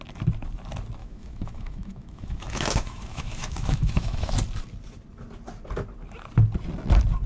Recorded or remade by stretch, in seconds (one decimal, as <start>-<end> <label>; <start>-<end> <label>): 0.0-1.0 recorded; 1.0-4.3 remade; 4.3-7.3 recorded